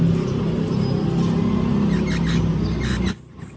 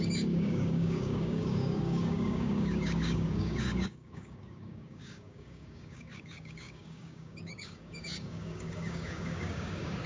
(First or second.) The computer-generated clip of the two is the second